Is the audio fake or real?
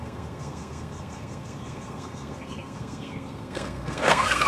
fake